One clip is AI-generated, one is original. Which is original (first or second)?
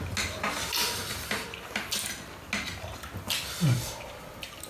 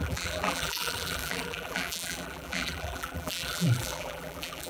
first